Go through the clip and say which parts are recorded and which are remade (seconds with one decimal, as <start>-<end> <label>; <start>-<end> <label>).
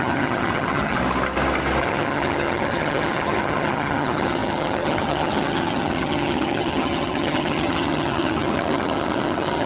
0.0-1.0 remade; 1.0-1.8 recorded; 1.8-9.7 remade